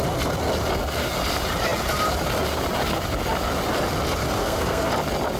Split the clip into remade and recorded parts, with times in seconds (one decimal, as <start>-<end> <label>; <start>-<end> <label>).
0.0-4.4 recorded; 4.4-4.9 remade; 4.9-5.4 recorded